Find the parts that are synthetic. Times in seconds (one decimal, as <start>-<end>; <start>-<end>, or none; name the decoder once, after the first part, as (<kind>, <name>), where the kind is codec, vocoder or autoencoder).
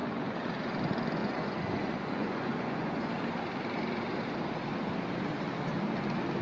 0.0-0.7 (vocoder, Vocos); 1.2-3.1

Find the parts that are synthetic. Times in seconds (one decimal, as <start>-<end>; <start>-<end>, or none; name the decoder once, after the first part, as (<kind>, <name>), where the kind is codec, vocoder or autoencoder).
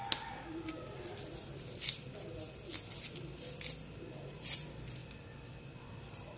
5.0-6.4 (vocoder, BigVGAN v2)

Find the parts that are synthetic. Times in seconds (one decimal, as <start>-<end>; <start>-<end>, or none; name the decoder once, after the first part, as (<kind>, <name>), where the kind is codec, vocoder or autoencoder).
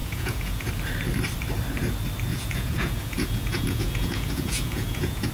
0.0-0.7 (vocoder, Vocos); 2.3-5.3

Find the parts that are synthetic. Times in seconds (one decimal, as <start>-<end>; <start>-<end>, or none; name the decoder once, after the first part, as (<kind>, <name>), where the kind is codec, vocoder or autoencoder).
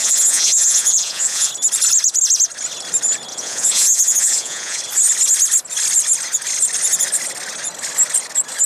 0.0-1.5 (vocoder, Vocos); 3.3-4.8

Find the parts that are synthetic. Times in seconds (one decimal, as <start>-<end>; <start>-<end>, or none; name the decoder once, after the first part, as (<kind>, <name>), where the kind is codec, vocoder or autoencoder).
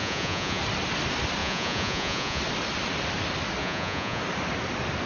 0.0-0.6 (vocoder, Vocos); 1.4-2.4; 3.6-4.2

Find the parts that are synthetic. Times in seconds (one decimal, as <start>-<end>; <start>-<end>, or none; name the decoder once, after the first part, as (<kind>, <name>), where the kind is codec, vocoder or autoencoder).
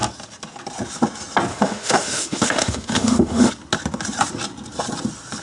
1.5-3.5 (autoencoder, DAC-VAE)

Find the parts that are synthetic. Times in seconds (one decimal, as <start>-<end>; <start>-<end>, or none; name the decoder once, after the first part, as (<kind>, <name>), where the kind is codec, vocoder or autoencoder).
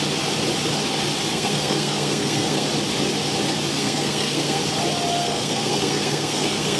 1.3-2.7 (codec, SNAC); 3.7-4.6; 5.2-6.8